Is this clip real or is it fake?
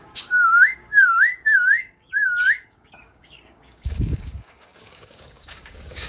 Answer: fake